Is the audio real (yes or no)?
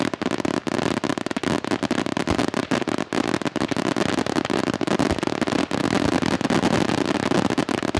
yes